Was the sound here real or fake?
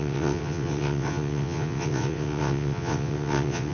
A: fake